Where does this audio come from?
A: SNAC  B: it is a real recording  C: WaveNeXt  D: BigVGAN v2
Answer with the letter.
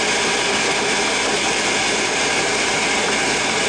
B